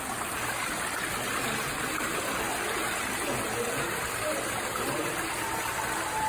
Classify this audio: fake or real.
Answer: real